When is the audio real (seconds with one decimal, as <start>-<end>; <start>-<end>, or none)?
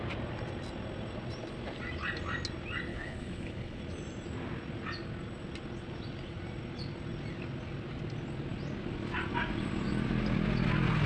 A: 0.0-2.9; 3.8-11.1